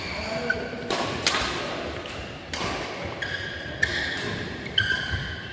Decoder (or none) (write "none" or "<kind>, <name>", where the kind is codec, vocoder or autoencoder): none